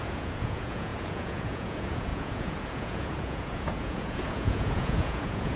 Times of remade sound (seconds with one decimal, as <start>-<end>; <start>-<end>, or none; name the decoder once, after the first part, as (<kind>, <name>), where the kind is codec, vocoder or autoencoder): 0.0-5.6 (vocoder, Vocos)